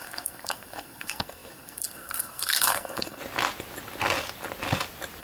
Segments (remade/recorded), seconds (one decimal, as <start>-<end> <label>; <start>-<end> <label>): 0.0-3.2 remade; 3.2-5.2 recorded